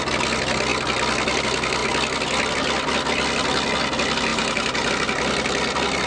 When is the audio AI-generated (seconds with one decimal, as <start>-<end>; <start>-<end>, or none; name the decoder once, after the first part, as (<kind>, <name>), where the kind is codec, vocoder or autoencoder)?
4.3-4.9 (vocoder, BigVGAN v2)